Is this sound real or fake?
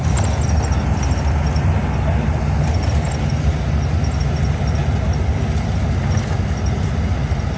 real